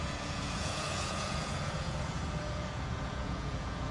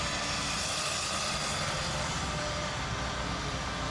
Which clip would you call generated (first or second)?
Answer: first